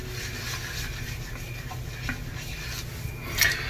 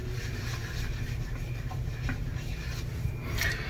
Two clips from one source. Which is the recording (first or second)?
first